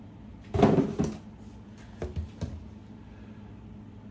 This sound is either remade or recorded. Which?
recorded